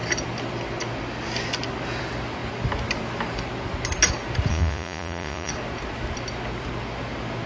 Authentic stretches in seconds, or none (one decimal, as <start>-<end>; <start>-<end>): 0.0-4.5; 5.5-7.5